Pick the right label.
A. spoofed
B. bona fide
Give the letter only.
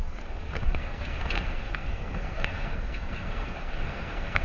A